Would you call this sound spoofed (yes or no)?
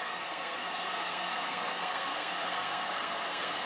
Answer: yes